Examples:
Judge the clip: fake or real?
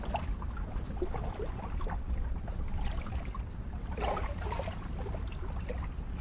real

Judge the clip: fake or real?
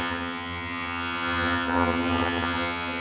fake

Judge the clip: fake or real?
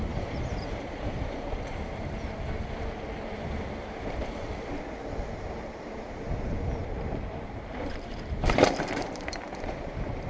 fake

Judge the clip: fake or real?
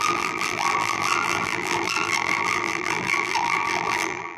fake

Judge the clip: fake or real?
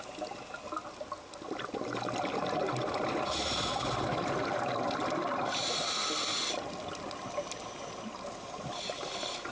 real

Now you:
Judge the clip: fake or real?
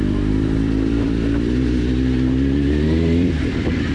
fake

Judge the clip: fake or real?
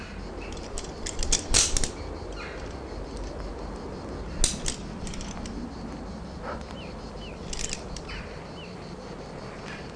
real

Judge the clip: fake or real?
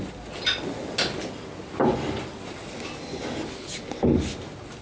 real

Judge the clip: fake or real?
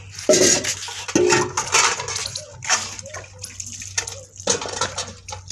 real